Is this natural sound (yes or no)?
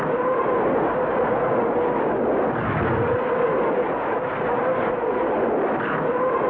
yes